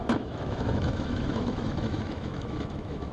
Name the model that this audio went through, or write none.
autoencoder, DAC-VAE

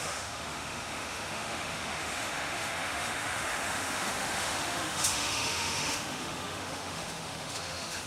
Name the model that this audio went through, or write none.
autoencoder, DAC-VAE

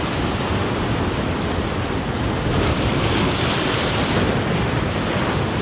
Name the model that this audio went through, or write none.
none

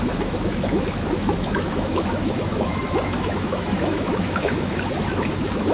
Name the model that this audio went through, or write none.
autoencoder, DAC-VAE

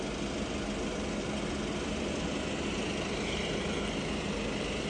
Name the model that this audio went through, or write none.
none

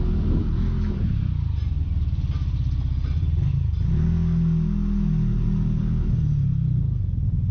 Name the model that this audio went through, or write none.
none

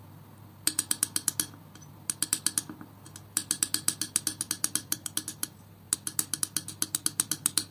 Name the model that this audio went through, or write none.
none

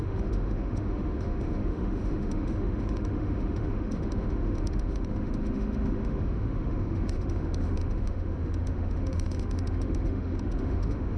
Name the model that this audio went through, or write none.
autoencoder, DAC-VAE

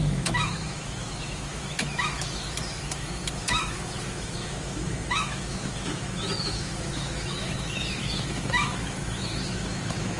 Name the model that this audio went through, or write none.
autoencoder, DAC-VAE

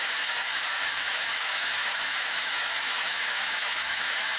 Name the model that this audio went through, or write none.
autoencoder, DAC-VAE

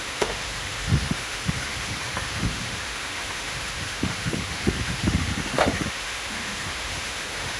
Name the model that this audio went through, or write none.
autoencoder, DAC-VAE